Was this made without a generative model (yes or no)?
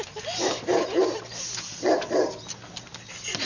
yes